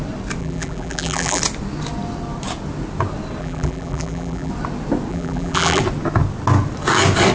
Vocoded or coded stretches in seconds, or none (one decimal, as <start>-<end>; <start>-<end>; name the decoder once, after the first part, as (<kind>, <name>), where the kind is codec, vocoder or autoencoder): 0.4-1.4 (vocoder, BigVGAN v2); 3.4-4.5; 5.1-5.8